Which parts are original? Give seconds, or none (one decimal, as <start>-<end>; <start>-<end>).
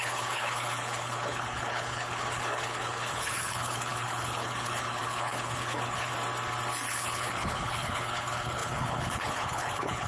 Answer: 6.1-6.9